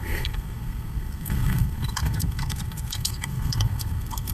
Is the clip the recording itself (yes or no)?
no